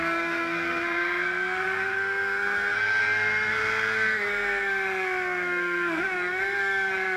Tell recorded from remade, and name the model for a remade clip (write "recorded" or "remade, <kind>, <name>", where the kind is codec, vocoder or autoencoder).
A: remade, codec, SNAC